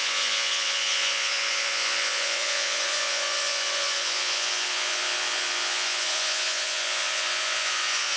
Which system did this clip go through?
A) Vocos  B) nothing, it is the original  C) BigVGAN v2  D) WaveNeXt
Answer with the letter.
A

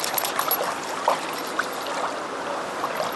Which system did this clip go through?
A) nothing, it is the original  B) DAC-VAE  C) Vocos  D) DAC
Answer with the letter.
A